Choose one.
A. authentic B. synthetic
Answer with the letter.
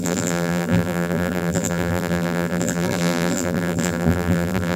B